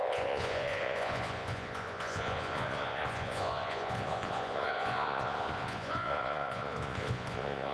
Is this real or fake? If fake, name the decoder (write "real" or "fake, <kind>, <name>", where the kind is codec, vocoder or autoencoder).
fake, vocoder, Vocos